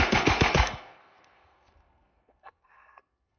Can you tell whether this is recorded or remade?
remade